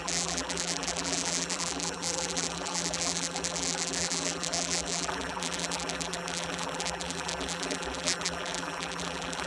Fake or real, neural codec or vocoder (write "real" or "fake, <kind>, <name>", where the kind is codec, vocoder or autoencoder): fake, vocoder, BigVGAN v2